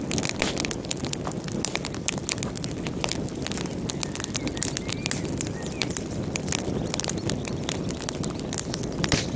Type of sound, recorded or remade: recorded